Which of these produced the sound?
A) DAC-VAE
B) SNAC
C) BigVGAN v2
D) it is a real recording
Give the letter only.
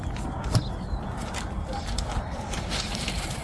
C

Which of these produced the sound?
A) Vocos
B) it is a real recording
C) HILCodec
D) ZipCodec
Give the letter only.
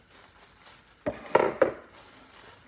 B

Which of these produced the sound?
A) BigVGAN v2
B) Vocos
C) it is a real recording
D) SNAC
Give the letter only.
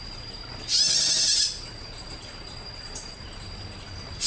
A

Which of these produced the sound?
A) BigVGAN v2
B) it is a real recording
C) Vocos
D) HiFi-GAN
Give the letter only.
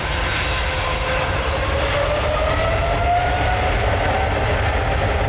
B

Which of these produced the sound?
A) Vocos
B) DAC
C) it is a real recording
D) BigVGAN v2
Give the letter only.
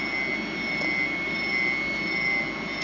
C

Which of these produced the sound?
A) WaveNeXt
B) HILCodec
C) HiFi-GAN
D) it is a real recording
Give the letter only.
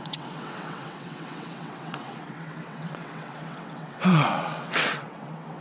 A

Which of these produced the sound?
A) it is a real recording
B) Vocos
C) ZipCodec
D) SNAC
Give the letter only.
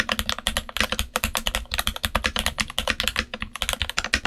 A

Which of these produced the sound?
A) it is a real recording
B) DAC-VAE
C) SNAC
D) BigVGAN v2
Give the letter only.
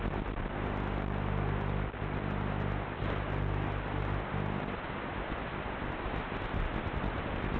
A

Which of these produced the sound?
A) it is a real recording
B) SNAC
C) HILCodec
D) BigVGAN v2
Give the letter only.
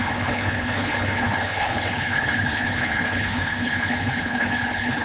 C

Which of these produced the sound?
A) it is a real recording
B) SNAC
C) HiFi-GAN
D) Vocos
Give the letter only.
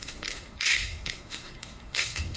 B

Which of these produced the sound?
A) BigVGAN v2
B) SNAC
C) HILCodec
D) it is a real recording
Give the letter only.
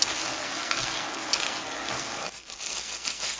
B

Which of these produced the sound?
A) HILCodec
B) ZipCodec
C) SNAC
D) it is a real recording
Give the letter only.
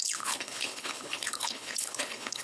A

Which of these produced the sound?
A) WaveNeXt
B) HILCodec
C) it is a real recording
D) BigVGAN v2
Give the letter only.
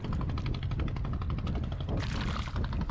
C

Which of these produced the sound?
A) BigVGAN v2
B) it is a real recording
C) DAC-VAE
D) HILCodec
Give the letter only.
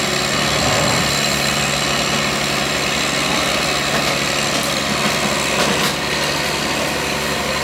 B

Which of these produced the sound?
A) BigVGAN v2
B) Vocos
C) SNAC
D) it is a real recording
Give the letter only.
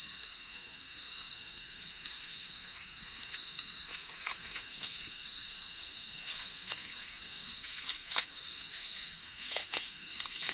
C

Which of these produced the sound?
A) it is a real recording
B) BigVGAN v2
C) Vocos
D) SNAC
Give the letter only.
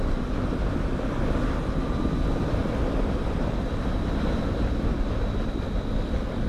B